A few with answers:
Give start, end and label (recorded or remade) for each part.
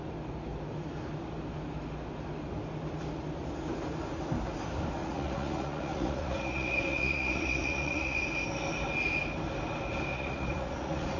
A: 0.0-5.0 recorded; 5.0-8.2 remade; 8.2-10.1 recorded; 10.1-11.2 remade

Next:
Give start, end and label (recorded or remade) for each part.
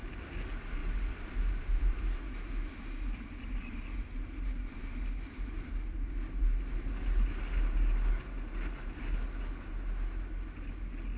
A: 0.0-0.8 recorded; 0.8-5.5 remade; 5.5-11.2 recorded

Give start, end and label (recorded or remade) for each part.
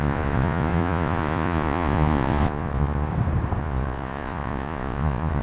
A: 0.0-3.1 remade; 3.1-3.6 recorded; 3.6-5.4 remade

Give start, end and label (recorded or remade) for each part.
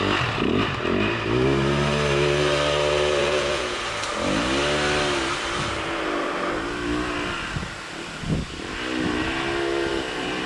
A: 0.0-3.2 recorded; 3.2-3.8 remade; 3.8-10.5 recorded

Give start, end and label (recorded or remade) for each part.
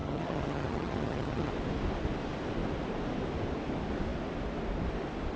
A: 0.0-1.5 remade; 1.5-5.4 recorded